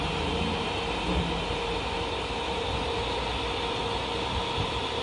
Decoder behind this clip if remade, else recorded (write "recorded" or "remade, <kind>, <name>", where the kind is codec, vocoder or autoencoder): recorded